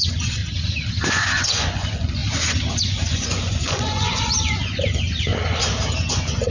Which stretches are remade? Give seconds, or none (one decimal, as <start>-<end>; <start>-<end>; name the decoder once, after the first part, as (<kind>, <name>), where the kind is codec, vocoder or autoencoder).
0.0-0.4 (vocoder, Vocos); 1.0-2.2; 2.8-5.3; 6.1-6.5